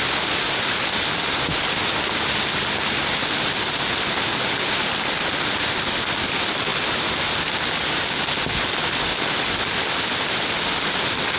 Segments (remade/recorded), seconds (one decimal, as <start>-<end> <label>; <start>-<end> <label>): 0.0-11.4 recorded